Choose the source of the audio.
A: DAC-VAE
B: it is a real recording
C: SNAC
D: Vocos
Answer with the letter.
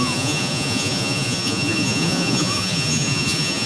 D